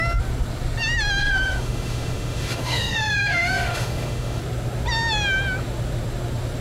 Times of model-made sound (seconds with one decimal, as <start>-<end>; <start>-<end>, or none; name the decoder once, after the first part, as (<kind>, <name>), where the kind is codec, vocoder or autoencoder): 1.2-4.4 (autoencoder, DAC-VAE)